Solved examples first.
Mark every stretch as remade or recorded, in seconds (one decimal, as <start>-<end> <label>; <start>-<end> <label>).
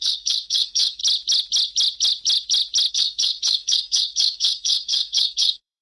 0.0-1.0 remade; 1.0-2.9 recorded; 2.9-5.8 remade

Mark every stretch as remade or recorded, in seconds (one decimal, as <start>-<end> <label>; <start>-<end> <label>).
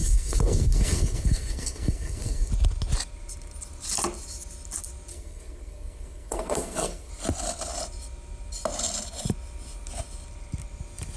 0.0-2.5 remade; 2.5-5.1 recorded; 5.1-7.1 remade; 7.1-11.2 recorded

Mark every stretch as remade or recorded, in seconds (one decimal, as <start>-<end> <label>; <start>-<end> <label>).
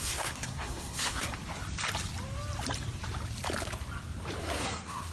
0.0-1.3 remade; 1.3-4.4 recorded; 4.4-5.1 remade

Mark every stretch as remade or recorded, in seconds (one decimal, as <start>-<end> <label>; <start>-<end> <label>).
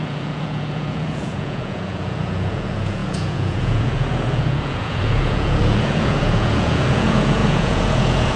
0.0-8.4 remade